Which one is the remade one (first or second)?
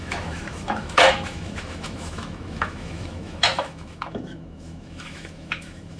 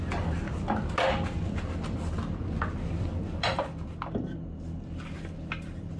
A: first